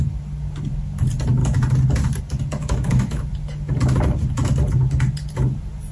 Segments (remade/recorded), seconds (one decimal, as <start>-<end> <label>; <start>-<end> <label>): 0.0-2.6 recorded; 2.6-3.2 remade; 3.2-5.9 recorded